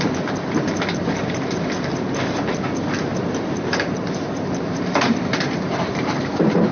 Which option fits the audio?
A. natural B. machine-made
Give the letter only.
A